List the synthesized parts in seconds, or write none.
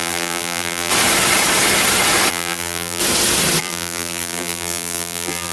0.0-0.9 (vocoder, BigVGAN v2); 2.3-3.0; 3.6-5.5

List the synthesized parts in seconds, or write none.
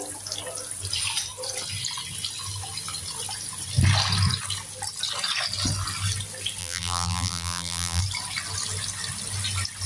6.6-8.0 (vocoder, BigVGAN v2)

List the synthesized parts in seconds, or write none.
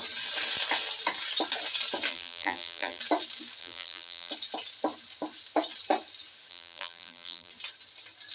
2.1-3.0 (vocoder, BigVGAN v2); 3.6-4.3; 6.5-7.5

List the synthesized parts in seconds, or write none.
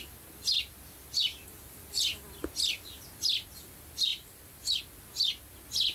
4.1-4.8 (vocoder, BigVGAN v2)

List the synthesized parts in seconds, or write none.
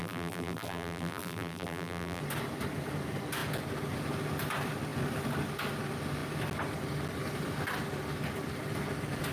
0.0-2.2 (vocoder, BigVGAN v2)